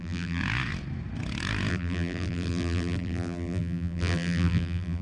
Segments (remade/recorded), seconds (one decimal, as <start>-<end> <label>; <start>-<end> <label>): 0.0-0.4 remade; 0.4-1.7 recorded; 1.7-5.0 remade